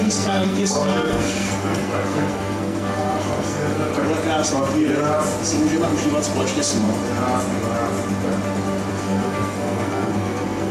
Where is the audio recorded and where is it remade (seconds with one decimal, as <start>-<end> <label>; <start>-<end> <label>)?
0.0-3.9 remade; 3.9-8.9 recorded; 8.9-10.7 remade

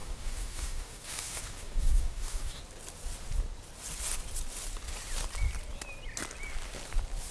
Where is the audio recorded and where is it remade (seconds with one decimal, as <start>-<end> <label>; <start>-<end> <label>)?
0.0-2.6 remade; 2.6-7.3 recorded

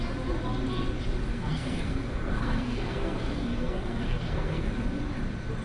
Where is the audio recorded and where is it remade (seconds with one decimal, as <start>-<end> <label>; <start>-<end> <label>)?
0.0-1.3 recorded; 1.3-4.7 remade; 4.7-5.6 recorded

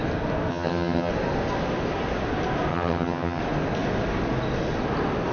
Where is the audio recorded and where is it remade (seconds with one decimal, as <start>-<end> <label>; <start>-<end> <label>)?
0.0-0.5 recorded; 0.5-1.1 remade; 1.1-2.7 recorded; 2.7-3.4 remade; 3.4-5.3 recorded

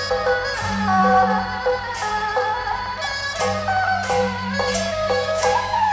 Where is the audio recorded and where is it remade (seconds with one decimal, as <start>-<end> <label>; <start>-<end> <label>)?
0.0-4.9 recorded; 4.9-5.9 remade

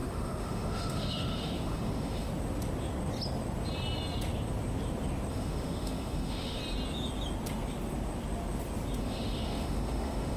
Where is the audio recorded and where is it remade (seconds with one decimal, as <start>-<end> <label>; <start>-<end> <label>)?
0.0-2.3 remade; 2.3-5.3 recorded; 5.3-6.6 remade; 6.6-9.0 recorded; 9.0-10.4 remade

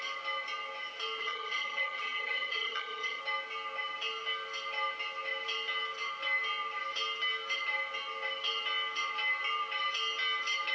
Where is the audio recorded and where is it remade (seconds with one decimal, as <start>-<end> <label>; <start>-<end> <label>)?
0.0-1.2 recorded; 1.2-3.2 remade; 3.2-10.7 recorded

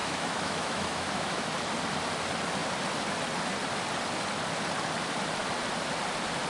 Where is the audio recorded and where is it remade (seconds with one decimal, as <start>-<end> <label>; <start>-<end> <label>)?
0.0-1.5 remade; 1.5-6.5 recorded